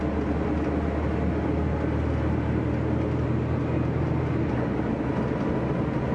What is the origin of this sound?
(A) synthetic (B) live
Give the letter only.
B